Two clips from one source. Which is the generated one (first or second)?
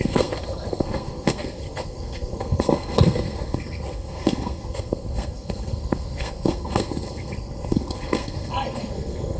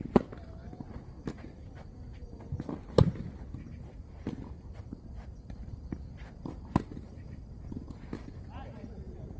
first